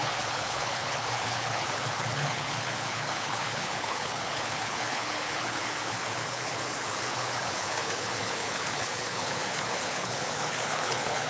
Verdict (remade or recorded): remade